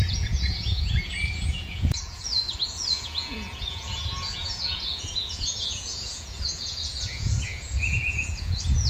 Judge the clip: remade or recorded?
remade